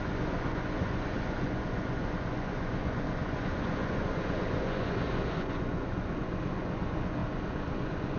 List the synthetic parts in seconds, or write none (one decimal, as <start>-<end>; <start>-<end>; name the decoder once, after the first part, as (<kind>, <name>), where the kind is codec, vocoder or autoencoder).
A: 0.0-8.2 (vocoder, Vocos)